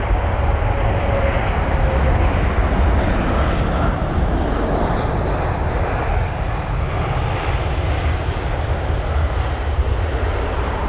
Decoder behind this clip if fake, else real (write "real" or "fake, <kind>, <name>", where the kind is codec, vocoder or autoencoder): real